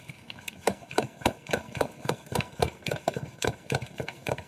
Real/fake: fake